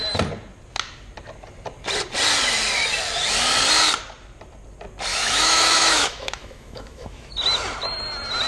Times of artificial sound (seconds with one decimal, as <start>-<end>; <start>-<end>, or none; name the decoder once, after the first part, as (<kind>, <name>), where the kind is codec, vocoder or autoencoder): 5.1-7.3 (autoencoder, DAC-VAE)